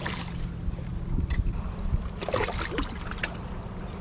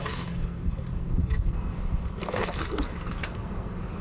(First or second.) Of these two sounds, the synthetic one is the second